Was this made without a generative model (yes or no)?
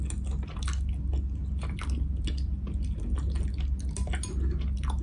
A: yes